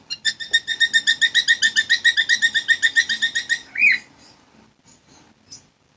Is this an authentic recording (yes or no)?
yes